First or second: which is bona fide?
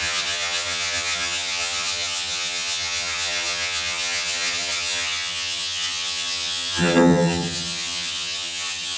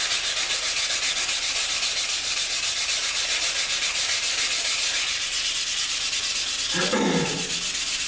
second